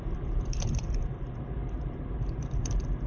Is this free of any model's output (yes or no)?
no